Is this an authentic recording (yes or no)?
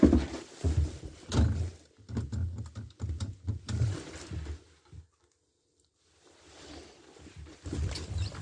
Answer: yes